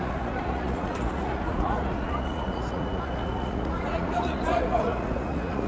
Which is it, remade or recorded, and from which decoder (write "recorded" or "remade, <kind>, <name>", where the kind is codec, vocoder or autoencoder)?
remade, vocoder, Vocos